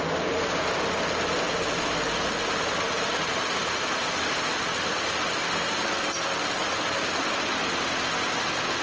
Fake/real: real